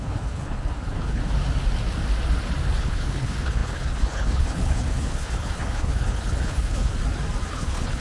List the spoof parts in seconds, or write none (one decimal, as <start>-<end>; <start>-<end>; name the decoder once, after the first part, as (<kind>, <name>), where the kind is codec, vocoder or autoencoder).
0.0-1.2 (codec, HILCodec); 2.8-6.9; 7.5-8.0